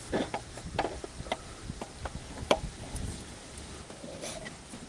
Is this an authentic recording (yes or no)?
yes